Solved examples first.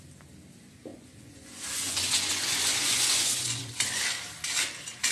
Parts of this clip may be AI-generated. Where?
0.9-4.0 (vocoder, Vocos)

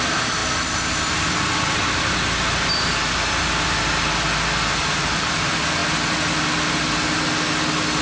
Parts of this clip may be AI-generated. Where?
none

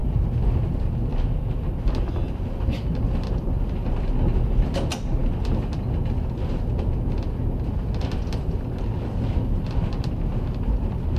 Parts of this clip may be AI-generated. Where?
none

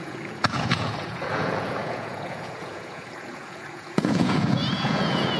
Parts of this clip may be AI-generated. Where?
0.0-5.4 (vocoder, Vocos)

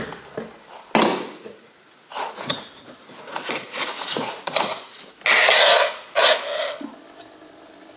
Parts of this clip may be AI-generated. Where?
1.1-5.0 (vocoder, Vocos)